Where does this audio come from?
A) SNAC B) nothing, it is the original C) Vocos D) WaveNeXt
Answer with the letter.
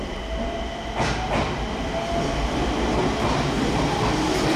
B